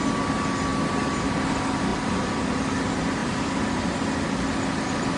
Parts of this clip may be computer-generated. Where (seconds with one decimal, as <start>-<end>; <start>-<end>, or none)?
0.7-1.4; 1.9-2.5; 3.2-3.8

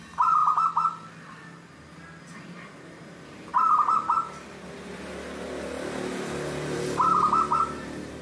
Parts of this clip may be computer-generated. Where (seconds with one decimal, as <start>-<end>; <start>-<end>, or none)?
0.0-0.4; 2.3-3.5; 7.5-8.2

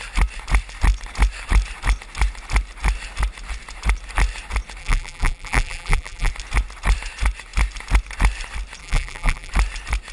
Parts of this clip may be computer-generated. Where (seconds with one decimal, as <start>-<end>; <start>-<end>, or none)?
4.8-6.3; 8.8-9.5